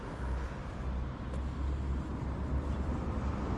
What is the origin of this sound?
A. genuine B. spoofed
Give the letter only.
A